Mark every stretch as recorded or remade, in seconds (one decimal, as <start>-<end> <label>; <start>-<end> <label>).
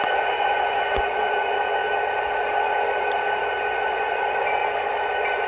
0.0-1.8 remade; 1.8-3.7 recorded; 3.7-4.6 remade; 4.6-5.1 recorded; 5.1-5.5 remade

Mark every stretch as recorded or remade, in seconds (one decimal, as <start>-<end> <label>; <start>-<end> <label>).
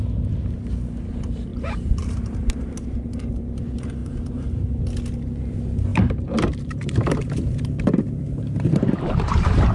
0.0-1.5 recorded; 1.5-3.3 remade; 3.3-4.0 recorded; 4.0-4.8 remade; 4.8-5.9 recorded; 5.9-9.7 remade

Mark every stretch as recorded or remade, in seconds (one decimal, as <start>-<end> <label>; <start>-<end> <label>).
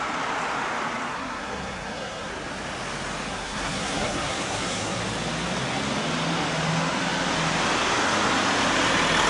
0.0-1.1 recorded; 1.1-2.3 remade; 2.3-3.3 recorded; 3.3-5.0 remade; 5.0-9.3 recorded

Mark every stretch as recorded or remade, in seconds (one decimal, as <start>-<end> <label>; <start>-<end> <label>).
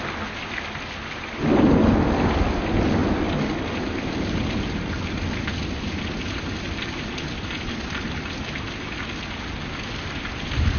0.0-10.8 recorded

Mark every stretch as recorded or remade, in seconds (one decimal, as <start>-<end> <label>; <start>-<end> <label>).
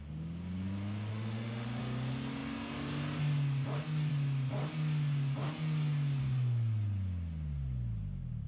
0.0-1.1 recorded; 1.1-1.8 remade; 1.8-8.5 recorded